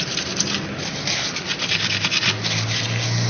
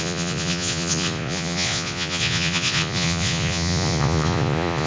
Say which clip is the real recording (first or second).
first